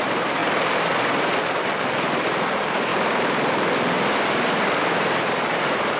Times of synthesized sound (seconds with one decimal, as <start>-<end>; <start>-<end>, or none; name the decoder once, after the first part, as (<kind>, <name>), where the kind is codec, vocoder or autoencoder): 0.0-0.4 (vocoder, BigVGAN v2); 1.4-2.9; 5.2-6.0